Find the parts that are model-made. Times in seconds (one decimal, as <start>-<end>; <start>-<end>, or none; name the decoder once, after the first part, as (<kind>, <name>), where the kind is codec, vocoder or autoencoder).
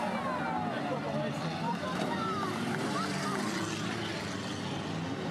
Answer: 1.2-4.4 (vocoder, BigVGAN v2)